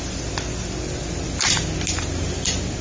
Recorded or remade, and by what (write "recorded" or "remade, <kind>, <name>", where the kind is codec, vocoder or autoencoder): recorded